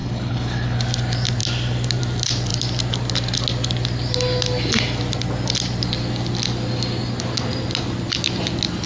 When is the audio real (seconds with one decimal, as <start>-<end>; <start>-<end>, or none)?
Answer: 0.8-8.9

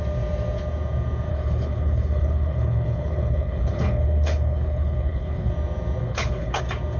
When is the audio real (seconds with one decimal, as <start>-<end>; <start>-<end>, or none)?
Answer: 0.0-1.3; 5.5-6.0; 6.6-7.0

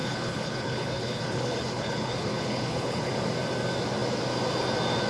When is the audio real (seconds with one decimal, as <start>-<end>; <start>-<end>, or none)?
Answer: 3.1-5.1

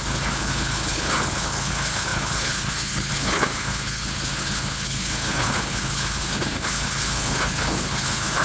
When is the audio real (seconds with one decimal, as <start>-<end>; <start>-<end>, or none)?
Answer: none